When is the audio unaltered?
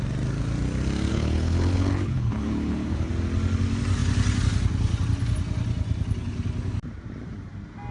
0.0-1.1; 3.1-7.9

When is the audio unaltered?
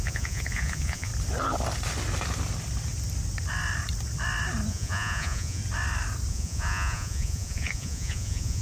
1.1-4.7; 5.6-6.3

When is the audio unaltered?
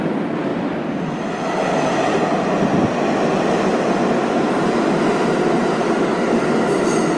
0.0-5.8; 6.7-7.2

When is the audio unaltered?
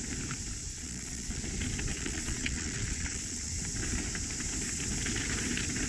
0.0-0.7; 1.4-1.9; 3.5-5.9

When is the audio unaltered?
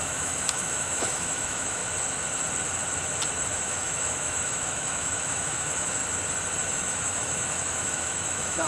1.8-3.5; 6.0-6.7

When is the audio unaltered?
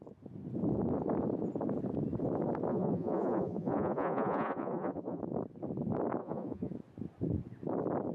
0.0-2.7; 5.2-6.2; 6.7-8.1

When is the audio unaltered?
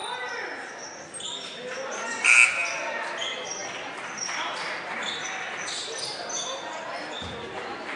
0.0-8.0